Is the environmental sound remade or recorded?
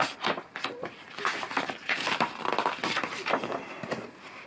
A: recorded